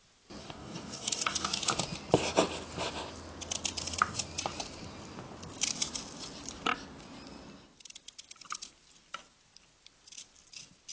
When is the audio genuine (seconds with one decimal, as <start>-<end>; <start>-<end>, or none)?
0.0-0.4; 1.6-10.9